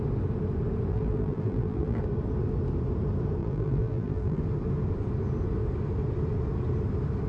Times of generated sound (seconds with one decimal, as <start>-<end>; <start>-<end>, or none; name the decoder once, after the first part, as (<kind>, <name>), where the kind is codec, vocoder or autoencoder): 0.9-2.0 (vocoder, BigVGAN v2); 3.4-4.4